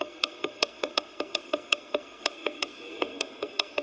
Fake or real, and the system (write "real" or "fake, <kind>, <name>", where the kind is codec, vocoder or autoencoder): fake, codec, SNAC